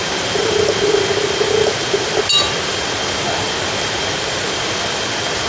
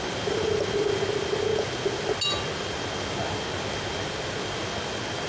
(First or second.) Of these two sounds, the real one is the second